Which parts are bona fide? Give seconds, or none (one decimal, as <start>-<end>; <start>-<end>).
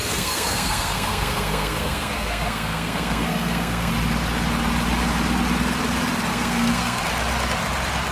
3.9-6.3; 7.0-8.1